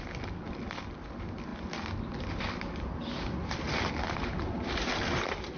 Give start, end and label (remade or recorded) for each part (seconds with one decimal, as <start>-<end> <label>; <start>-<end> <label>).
0.0-5.6 recorded